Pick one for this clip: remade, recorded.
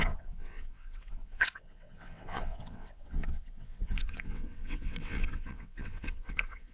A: remade